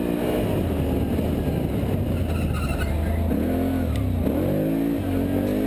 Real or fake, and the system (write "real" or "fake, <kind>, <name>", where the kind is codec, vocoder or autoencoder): real